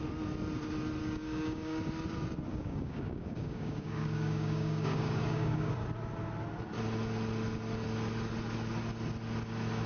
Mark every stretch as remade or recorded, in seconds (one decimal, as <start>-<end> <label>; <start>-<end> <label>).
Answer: 0.0-1.0 recorded; 1.0-1.8 remade; 1.8-2.5 recorded; 2.5-5.7 remade; 5.7-9.9 recorded